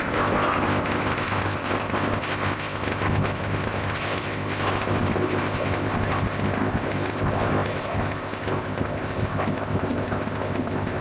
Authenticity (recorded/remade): remade